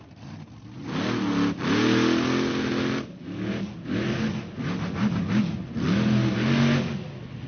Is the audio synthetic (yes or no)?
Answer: no